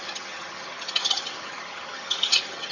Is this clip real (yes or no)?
no